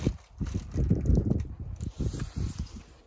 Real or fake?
real